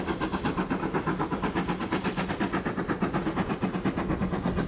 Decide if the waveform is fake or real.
real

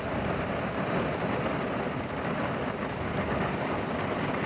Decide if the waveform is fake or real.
real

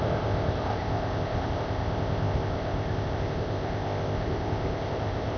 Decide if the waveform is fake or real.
fake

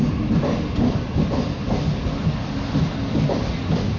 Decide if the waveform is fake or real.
real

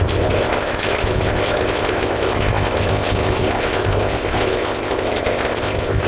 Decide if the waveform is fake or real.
fake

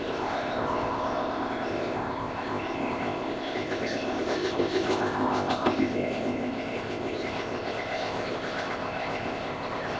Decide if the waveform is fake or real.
fake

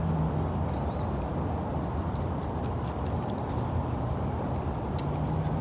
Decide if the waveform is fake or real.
real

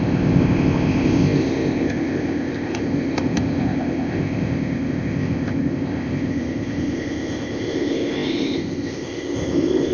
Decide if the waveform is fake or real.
fake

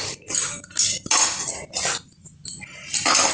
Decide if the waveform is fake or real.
real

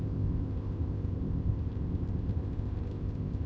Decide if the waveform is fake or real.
fake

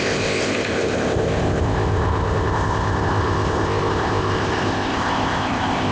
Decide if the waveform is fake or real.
fake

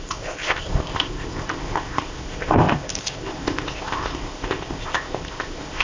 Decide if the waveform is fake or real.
fake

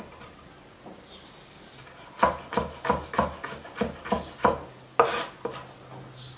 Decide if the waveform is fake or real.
real